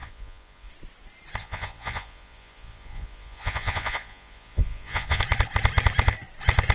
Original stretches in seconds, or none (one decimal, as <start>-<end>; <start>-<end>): 0.7-1.4; 5.2-6.7